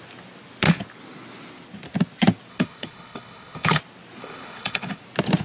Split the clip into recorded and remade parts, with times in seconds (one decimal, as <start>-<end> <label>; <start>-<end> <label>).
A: 0.0-2.5 recorded; 2.5-3.8 remade; 3.8-4.2 recorded; 4.2-5.0 remade; 5.0-5.4 recorded